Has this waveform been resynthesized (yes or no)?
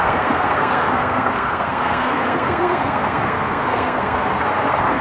yes